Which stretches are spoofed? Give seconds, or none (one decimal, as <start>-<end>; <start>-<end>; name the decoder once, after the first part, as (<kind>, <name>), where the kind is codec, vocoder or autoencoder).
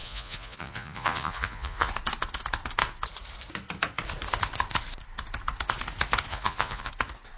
0.0-1.9 (vocoder, Vocos); 6.3-6.9